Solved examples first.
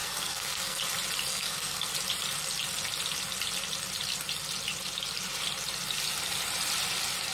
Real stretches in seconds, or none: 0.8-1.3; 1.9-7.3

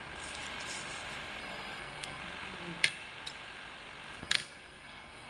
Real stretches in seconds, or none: 0.0-1.4; 2.2-4.2

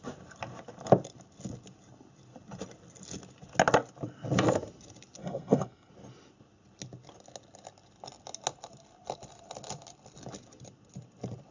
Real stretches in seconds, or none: 0.0-5.2; 5.9-11.5

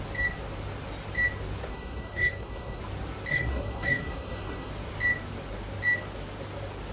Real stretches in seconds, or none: 0.0-1.7; 2.8-3.3; 4.7-6.9